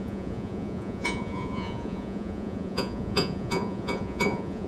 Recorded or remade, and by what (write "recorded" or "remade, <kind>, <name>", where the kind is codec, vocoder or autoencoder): remade, vocoder, Vocos